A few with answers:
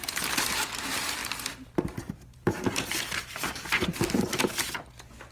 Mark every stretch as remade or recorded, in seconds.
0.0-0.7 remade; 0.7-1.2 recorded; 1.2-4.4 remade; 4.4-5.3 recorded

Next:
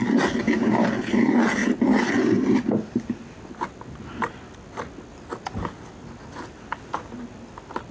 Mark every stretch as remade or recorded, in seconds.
0.0-7.9 recorded

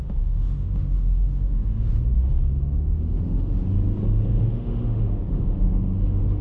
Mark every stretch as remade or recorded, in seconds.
0.0-3.6 remade; 3.6-4.4 recorded; 4.4-6.4 remade

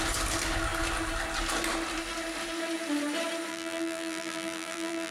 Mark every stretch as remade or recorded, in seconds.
0.0-3.5 recorded; 3.5-5.1 remade

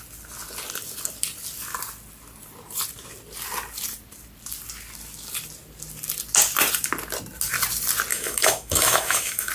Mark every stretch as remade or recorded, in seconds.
0.0-8.1 recorded; 8.1-9.5 remade

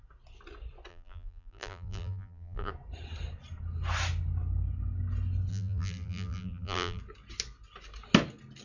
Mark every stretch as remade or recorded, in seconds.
0.0-0.9 recorded; 0.9-2.7 remade; 2.7-5.5 recorded; 5.5-7.0 remade; 7.0-8.6 recorded